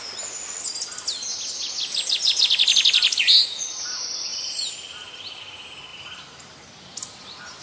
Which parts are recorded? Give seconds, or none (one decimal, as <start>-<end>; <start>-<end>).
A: 0.0-4.3; 5.4-5.9; 6.8-7.6

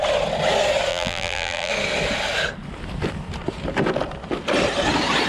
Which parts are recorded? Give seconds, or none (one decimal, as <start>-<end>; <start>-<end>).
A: 0.0-0.9; 1.7-5.3

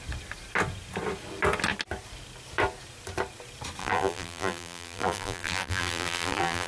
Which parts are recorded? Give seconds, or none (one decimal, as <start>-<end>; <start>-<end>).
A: 0.0-3.8

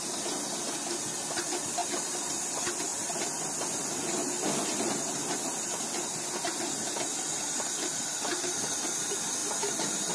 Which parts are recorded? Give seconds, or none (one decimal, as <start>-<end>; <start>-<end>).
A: 0.0-1.8; 2.3-9.4

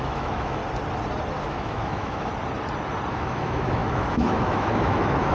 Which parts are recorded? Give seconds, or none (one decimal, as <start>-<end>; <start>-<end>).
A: 0.6-1.4; 2.3-3.1

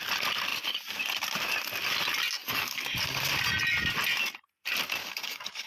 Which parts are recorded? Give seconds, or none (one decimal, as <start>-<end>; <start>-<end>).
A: 0.0-2.4; 3.2-5.0

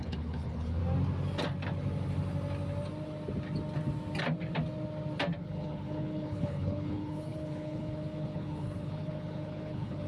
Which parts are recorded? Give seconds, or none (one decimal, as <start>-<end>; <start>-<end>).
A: 0.8-5.4

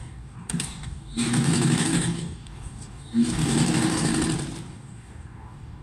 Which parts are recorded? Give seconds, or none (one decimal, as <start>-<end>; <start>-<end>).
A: 4.1-4.7